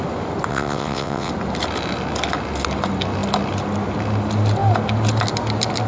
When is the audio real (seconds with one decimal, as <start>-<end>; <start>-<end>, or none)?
0.0-0.5; 1.3-5.9